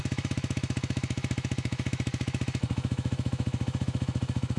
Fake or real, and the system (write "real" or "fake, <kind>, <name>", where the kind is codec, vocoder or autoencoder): fake, autoencoder, DAC-VAE